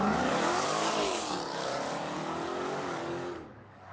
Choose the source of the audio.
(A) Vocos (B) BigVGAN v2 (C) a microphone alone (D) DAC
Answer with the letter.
D